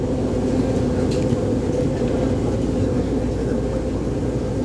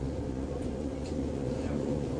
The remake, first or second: second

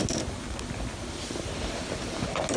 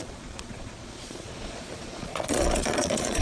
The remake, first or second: second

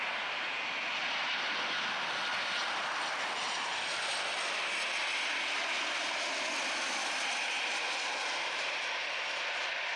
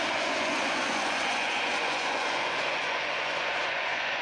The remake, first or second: second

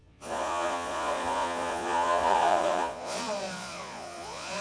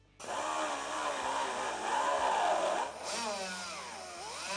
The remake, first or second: first